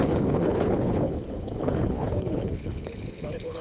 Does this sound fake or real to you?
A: fake